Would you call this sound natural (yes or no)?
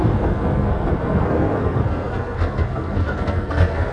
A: no